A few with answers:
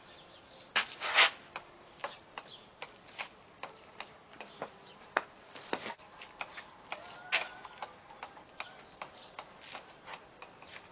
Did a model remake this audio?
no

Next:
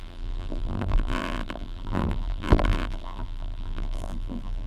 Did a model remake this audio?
yes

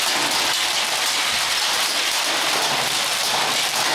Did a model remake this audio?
no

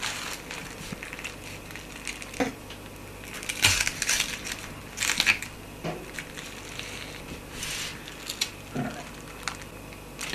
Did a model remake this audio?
no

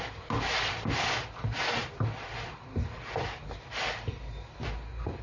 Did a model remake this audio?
no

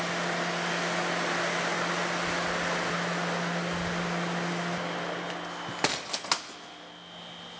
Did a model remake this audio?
no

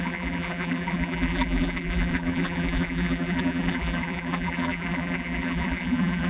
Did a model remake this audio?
yes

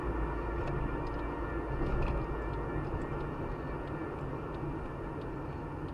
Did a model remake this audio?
no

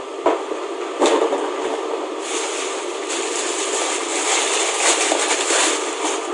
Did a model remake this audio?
yes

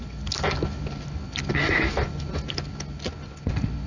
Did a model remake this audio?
no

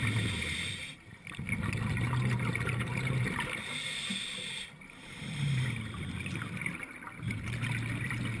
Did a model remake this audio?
no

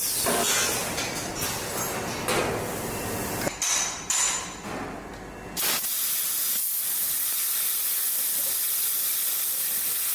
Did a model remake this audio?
no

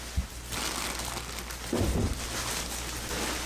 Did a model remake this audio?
no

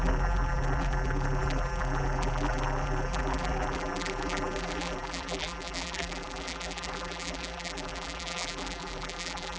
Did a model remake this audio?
yes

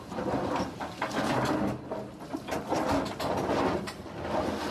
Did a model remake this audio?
no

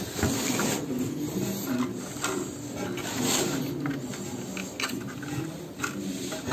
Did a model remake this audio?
no